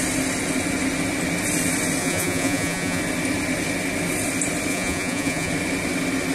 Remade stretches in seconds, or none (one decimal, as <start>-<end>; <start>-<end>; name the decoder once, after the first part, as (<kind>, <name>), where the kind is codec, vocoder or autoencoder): 2.0-3.0 (vocoder, Vocos); 4.7-5.5